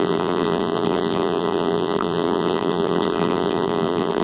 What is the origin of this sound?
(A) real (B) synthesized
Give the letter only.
B